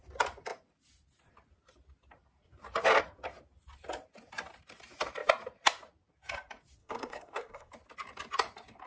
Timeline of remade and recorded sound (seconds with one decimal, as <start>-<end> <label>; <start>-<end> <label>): 0.0-6.8 recorded; 6.8-7.7 remade; 7.7-8.9 recorded